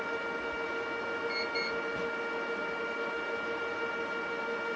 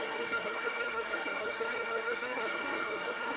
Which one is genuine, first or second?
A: first